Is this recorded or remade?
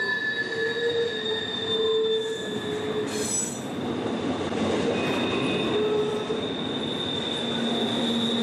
recorded